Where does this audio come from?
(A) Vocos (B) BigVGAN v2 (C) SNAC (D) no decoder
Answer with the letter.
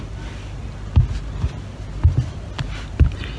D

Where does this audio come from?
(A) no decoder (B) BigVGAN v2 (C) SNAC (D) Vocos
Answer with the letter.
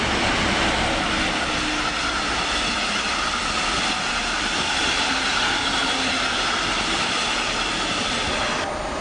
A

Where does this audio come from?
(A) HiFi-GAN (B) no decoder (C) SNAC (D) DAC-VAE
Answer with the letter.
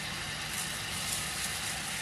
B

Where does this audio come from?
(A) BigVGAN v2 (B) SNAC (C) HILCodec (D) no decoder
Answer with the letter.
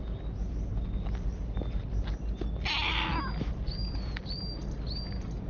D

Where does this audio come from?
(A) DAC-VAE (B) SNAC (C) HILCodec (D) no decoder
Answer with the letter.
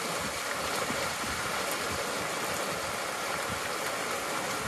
D